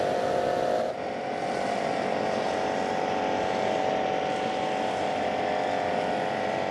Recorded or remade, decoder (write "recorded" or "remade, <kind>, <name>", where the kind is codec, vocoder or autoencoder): recorded